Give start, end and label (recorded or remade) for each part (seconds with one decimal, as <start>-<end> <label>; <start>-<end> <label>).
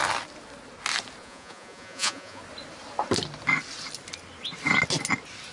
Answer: 0.0-1.2 recorded; 1.2-2.4 remade; 2.4-5.5 recorded